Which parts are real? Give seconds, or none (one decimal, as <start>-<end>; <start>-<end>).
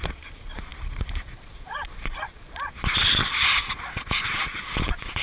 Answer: none